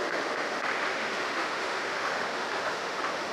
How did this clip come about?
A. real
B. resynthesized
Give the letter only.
B